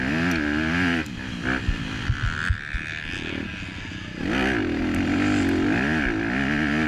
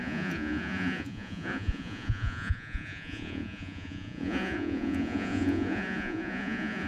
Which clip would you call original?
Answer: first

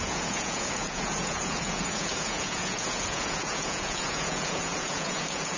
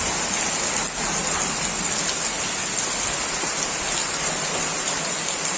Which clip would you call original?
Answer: second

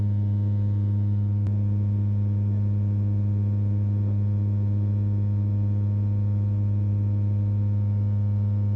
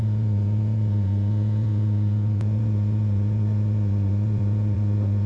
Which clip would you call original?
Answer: first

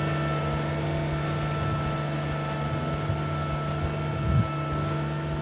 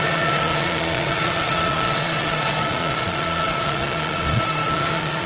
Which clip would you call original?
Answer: first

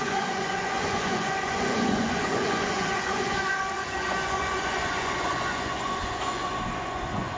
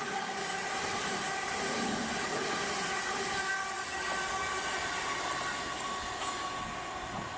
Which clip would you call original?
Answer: second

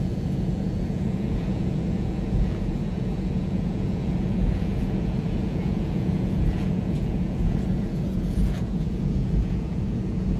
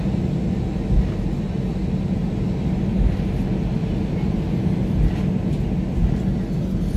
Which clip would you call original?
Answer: second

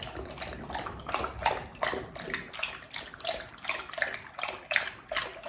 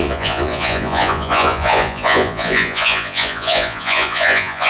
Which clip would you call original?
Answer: first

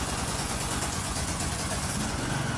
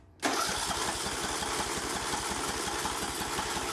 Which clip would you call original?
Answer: second